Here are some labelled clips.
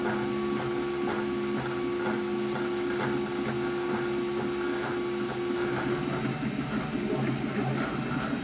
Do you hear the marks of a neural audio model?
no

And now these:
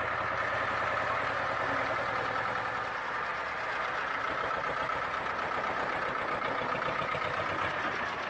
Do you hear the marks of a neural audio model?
no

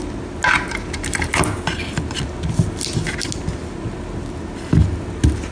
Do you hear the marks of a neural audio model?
no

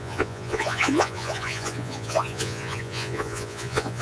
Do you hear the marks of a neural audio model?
yes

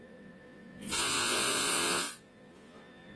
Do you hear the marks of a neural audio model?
yes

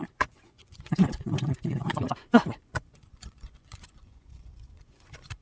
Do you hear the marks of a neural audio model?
yes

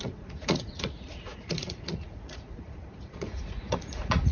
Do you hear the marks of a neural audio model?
yes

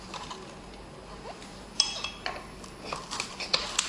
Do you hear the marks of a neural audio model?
no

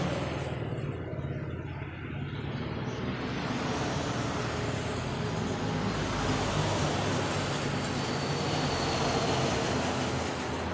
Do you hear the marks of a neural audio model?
no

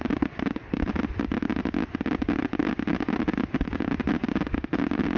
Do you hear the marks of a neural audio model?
no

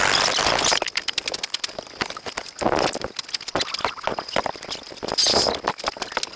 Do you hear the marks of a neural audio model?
no